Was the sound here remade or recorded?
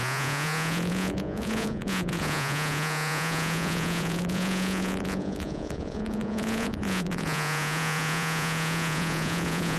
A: remade